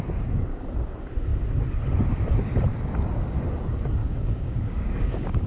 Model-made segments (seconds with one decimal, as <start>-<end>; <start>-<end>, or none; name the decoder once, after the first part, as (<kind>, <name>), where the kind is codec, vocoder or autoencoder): 4.0-5.5 (codec, DAC)